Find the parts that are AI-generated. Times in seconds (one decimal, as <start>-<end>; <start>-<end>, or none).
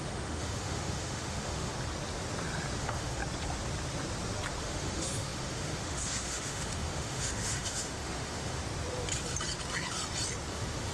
0.0-1.7; 2.8-3.2; 4.6-8.6; 10.5-10.9